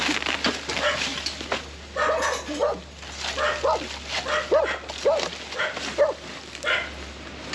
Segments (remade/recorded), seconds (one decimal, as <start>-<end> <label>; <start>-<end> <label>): 0.0-7.5 recorded